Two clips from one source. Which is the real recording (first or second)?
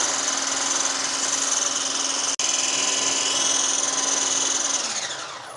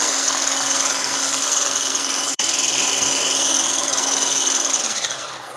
first